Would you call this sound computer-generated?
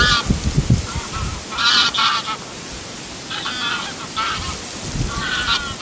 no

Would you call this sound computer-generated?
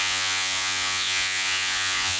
yes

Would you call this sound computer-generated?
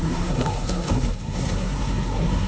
yes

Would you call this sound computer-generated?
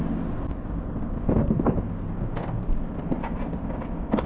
no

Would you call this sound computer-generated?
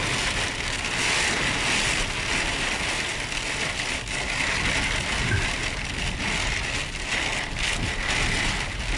no